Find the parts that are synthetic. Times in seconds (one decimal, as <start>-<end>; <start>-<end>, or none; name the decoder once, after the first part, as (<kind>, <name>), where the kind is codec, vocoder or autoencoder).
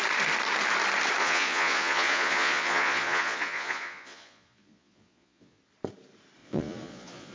1.2-5.6 (vocoder, Vocos); 6.4-7.3